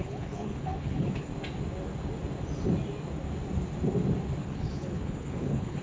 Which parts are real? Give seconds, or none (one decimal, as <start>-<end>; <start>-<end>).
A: 1.3-4.4